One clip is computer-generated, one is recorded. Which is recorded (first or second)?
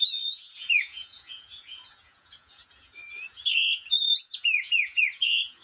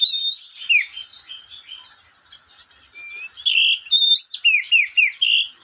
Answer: second